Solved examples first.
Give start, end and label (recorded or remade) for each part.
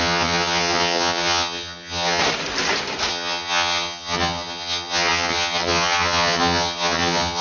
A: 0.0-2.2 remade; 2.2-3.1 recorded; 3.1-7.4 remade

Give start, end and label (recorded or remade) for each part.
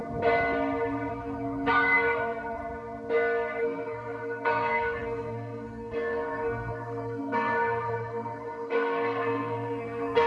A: 0.0-1.1 recorded; 1.1-2.6 remade; 2.6-3.6 recorded; 3.6-10.3 remade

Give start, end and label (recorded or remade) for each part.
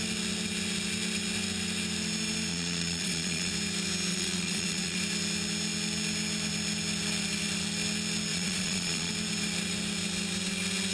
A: 0.0-2.5 recorded; 2.5-3.5 remade; 3.5-4.1 recorded; 4.1-5.0 remade; 5.0-8.3 recorded; 8.3-9.1 remade; 9.1-10.9 recorded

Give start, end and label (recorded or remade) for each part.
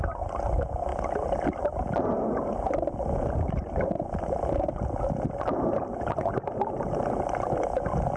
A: 0.0-8.2 recorded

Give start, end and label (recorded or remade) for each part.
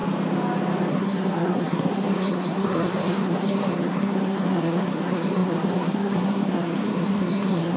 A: 0.0-0.9 recorded; 0.9-7.8 remade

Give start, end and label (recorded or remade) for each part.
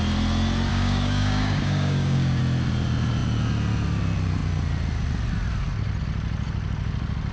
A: 0.0-0.7 recorded; 0.7-2.4 remade; 2.4-7.3 recorded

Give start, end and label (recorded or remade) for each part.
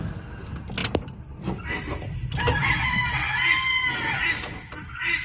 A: 0.0-5.2 recorded